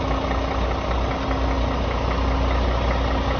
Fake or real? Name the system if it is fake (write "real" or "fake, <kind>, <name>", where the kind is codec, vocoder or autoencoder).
real